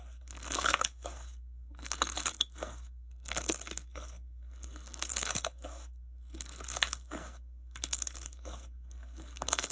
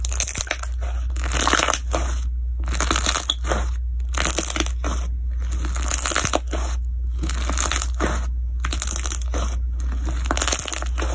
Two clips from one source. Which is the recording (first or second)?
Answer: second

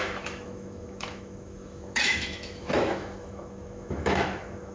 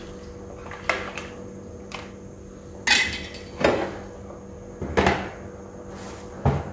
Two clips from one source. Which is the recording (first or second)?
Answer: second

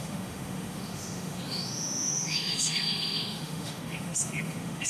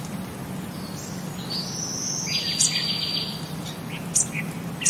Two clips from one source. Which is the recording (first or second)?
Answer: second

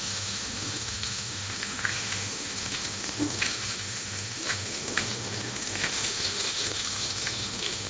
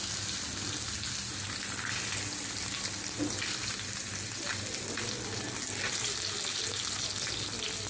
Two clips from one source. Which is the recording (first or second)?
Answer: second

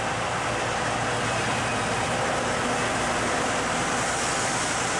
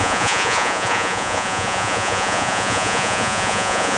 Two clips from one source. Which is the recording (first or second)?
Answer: first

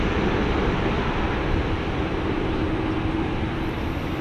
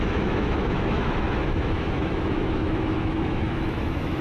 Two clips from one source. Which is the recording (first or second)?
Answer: first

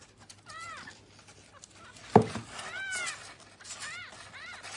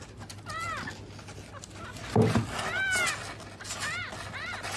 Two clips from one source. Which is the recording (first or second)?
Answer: second